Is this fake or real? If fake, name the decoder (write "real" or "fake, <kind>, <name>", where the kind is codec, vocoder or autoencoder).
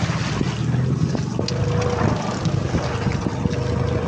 real